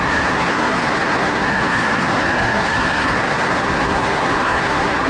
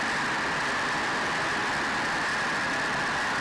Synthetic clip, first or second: first